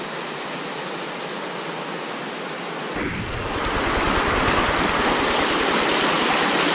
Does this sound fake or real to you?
real